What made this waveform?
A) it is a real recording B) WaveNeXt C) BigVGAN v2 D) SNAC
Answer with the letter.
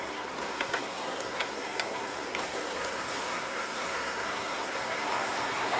D